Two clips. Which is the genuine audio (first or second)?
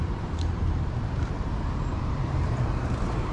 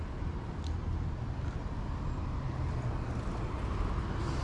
second